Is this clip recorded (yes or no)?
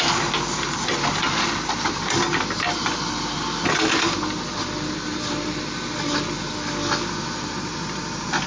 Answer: yes